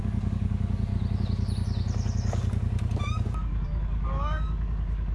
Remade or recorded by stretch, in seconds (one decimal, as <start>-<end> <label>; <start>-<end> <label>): 0.0-0.9 remade; 0.9-3.0 recorded; 3.0-5.1 remade